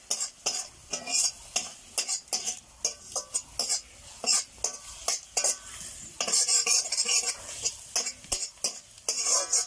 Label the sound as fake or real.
real